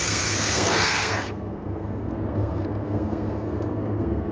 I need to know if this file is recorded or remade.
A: remade